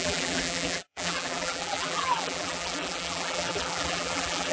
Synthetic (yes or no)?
yes